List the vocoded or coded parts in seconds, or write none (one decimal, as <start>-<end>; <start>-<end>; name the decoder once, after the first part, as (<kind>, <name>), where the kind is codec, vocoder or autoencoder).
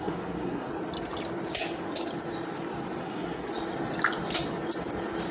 0.0-0.7 (codec, SNAC); 3.0-3.5